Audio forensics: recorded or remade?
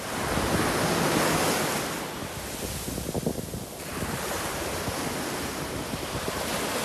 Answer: recorded